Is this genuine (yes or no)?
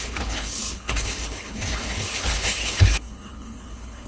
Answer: no